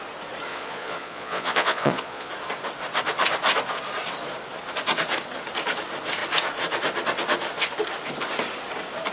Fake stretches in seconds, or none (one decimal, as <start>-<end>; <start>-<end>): 0.5-2.3